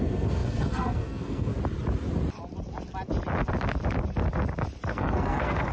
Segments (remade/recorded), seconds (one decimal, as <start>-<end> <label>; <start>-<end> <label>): 0.0-1.5 remade; 1.5-4.9 recorded; 4.9-5.7 remade